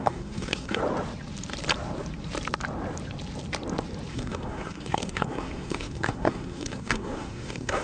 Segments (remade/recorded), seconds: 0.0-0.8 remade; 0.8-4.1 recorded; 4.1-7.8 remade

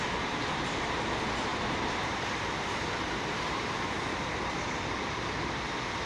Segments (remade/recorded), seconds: 0.0-1.5 recorded; 1.5-5.2 remade; 5.2-6.1 recorded

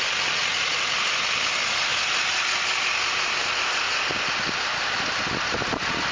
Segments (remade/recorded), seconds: 0.0-6.1 recorded

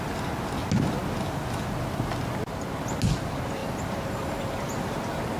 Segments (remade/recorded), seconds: 0.0-3.6 recorded; 3.6-4.4 remade; 4.4-5.4 recorded

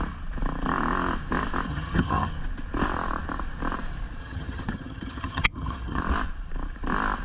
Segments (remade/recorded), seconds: 0.0-1.7 recorded; 1.7-2.3 remade; 2.3-4.2 recorded; 4.2-6.0 remade; 6.0-7.2 recorded

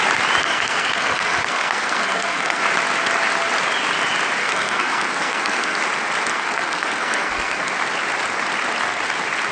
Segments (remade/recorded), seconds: 0.0-0.4 recorded; 0.4-2.6 remade; 2.6-4.4 recorded; 4.4-5.8 remade; 5.8-6.3 recorded; 6.3-7.7 remade; 7.7-9.5 recorded

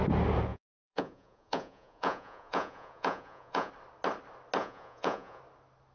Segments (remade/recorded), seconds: 0.0-0.5 recorded; 0.5-3.7 remade; 3.7-4.6 recorded; 4.6-5.4 remade; 5.4-5.9 recorded